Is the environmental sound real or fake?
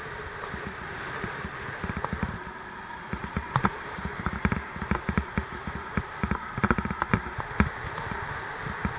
fake